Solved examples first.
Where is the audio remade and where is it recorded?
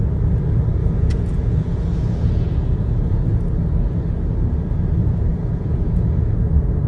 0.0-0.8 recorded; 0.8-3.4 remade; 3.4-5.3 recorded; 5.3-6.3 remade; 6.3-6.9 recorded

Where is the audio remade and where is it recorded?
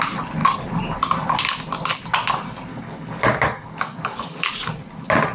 0.0-2.7 recorded; 2.7-4.5 remade; 4.5-5.3 recorded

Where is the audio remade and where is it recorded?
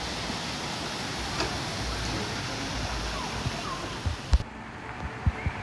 0.0-5.6 recorded